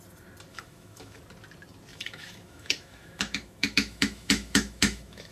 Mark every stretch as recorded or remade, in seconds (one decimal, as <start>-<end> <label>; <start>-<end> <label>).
0.0-0.5 recorded; 0.5-1.2 remade; 1.2-1.9 recorded; 1.9-5.3 remade